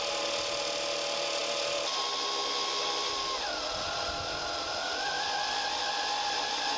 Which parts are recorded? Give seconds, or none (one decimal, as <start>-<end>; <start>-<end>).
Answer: 0.0-6.8